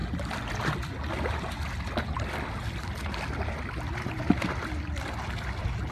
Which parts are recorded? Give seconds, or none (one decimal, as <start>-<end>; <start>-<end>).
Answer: 0.0-5.9

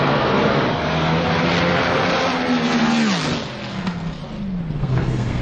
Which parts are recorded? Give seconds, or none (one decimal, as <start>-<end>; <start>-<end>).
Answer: 0.5-3.7; 4.2-4.8

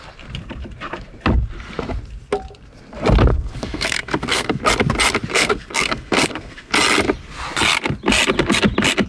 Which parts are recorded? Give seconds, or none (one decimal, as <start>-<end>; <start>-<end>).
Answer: 0.0-3.3; 4.6-5.3; 6.7-9.1

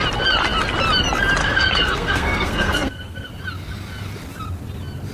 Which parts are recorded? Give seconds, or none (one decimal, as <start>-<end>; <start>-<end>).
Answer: 0.0-1.4; 3.3-5.1

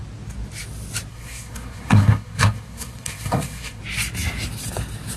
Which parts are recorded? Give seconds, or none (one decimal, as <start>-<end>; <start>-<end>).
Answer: 0.0-1.1; 3.8-5.2

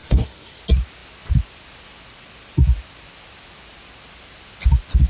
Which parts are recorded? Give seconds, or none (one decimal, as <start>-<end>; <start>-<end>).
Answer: 0.6-5.1

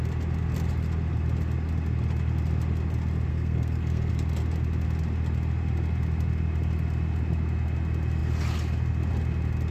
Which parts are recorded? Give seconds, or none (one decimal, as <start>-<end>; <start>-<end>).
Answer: 0.0-3.3; 4.1-9.7